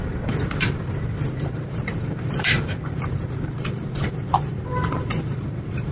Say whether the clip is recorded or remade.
remade